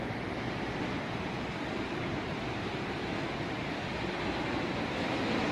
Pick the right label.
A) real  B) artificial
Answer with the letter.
A